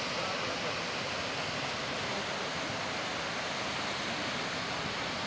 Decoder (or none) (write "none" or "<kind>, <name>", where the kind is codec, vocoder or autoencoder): none